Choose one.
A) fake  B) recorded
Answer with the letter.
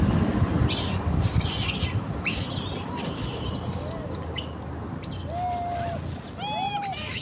B